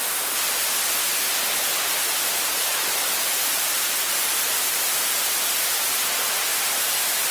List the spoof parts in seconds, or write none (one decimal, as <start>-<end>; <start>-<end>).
1.7-6.0